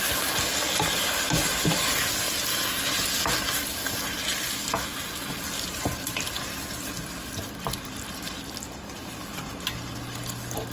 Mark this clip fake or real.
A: real